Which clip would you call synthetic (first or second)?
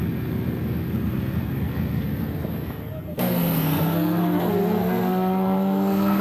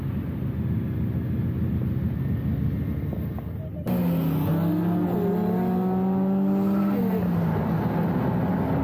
first